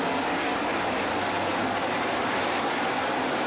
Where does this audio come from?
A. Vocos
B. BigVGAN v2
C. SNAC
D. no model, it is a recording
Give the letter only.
D